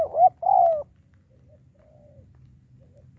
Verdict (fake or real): real